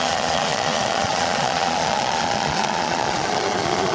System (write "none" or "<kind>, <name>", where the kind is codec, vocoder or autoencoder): vocoder, Vocos